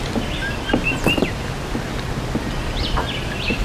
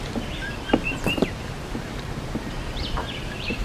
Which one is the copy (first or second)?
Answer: second